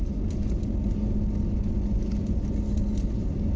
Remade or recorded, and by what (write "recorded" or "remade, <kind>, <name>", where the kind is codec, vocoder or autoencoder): recorded